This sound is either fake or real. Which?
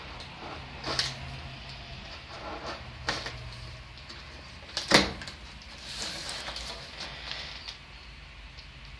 real